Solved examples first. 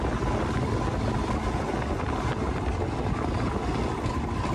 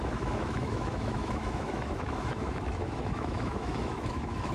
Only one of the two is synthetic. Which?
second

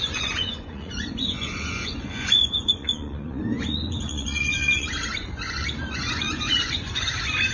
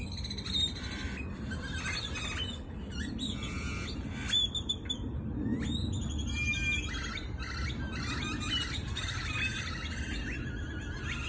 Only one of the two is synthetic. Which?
first